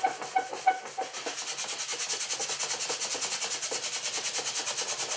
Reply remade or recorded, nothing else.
recorded